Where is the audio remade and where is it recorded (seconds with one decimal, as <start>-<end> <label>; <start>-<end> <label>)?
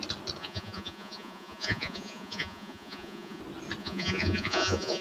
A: 0.0-0.4 recorded; 0.4-3.4 remade; 3.4-3.8 recorded; 3.8-5.0 remade